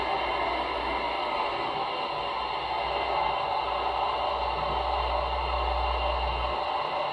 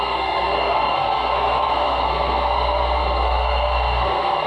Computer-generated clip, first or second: second